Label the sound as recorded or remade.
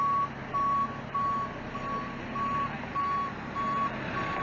recorded